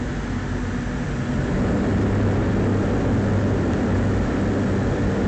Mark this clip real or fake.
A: real